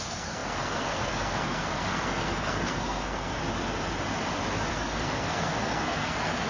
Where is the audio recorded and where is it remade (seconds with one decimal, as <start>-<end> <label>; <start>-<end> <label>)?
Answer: 0.0-3.4 remade; 3.4-4.7 recorded; 4.7-6.5 remade